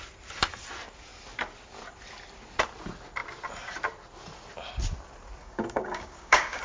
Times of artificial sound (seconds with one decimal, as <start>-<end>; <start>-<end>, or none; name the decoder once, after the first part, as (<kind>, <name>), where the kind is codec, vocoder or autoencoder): 5.4-6.6 (codec, DAC)